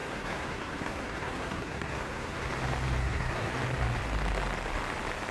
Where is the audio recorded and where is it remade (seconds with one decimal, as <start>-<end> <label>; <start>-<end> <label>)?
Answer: 0.0-2.5 remade; 2.5-3.0 recorded; 3.0-3.5 remade; 3.5-5.3 recorded